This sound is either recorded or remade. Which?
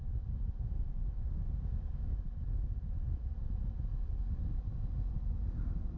recorded